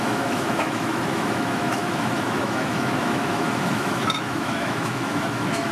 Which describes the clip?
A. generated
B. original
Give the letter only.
A